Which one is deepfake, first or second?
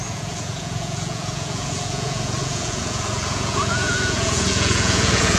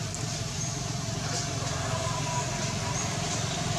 first